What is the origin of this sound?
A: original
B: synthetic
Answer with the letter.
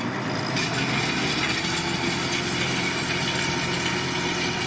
A